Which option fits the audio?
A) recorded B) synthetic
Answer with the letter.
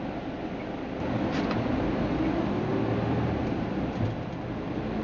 A